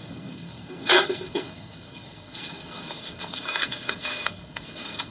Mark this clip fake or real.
fake